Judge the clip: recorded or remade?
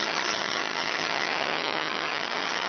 remade